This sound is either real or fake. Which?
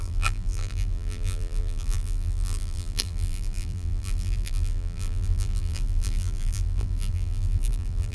fake